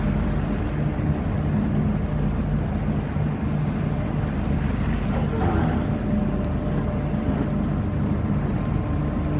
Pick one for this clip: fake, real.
real